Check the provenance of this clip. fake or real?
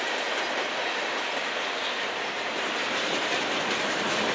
real